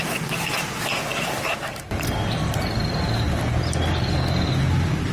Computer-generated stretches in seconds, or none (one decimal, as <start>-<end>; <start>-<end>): none